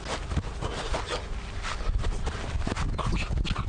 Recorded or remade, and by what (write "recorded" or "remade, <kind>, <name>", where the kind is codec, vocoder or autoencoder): recorded